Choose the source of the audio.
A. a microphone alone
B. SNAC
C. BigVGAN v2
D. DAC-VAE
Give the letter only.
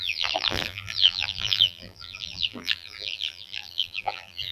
C